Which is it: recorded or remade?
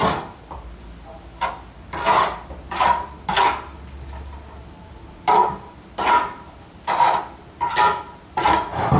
recorded